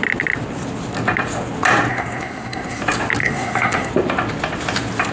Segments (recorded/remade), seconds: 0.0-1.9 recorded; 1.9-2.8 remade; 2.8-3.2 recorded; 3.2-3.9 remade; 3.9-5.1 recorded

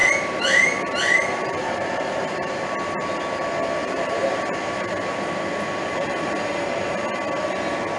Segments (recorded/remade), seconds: 0.0-2.6 remade; 2.6-3.8 recorded; 3.8-6.3 remade; 6.3-8.0 recorded

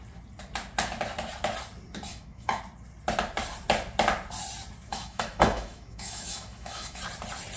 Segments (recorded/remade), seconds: 0.0-2.1 recorded; 2.1-2.6 remade; 2.6-4.9 recorded; 4.9-7.0 remade; 7.0-7.6 recorded

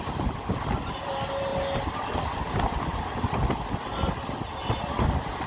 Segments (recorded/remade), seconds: 0.0-5.5 recorded

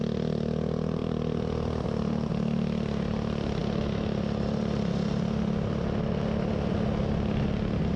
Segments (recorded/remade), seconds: 0.0-8.0 recorded

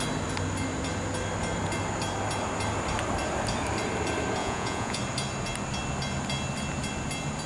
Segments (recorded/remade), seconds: 0.0-4.4 recorded; 4.4-5.0 remade; 5.0-7.5 recorded

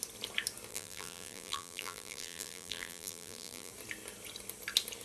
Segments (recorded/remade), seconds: 0.0-0.7 recorded; 0.7-3.7 remade; 3.7-5.0 recorded

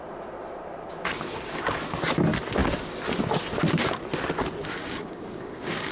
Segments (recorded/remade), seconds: 0.0-4.8 recorded; 4.8-5.9 remade